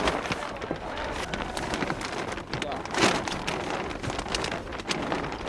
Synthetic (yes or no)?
no